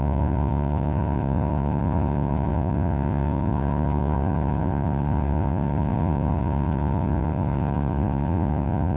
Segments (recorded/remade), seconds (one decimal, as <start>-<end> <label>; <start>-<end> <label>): 0.0-9.0 remade